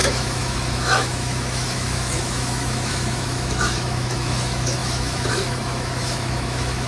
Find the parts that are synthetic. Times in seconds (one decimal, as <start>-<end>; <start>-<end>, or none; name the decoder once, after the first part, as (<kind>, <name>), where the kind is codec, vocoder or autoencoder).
0.0-6.9 (autoencoder, DAC-VAE)